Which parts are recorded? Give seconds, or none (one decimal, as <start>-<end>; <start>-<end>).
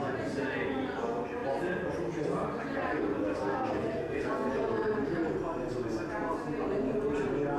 0.0-3.2; 4.5-7.6